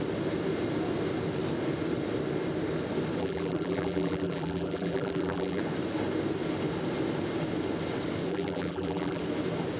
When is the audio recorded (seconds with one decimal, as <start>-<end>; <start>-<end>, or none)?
0.0-3.2; 5.6-8.3; 9.2-9.8